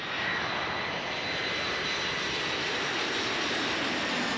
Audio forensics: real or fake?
real